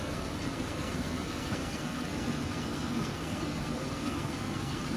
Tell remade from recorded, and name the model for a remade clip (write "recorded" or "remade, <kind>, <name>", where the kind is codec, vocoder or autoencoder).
remade, codec, SNAC